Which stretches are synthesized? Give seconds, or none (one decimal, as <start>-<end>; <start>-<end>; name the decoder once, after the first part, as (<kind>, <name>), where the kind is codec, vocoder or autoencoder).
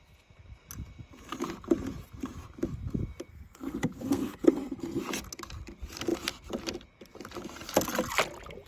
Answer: 3.3-5.0 (codec, SNAC)